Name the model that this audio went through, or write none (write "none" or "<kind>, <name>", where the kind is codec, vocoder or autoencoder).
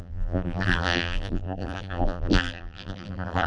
vocoder, BigVGAN v2